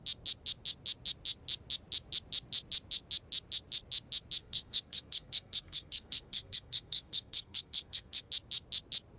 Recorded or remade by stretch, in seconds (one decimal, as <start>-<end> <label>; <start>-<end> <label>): 0.0-4.4 recorded; 4.4-8.3 remade; 8.3-9.2 recorded